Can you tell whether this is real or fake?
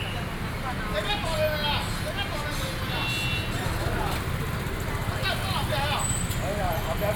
real